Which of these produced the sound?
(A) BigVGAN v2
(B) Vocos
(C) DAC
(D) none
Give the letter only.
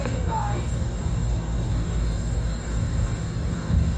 C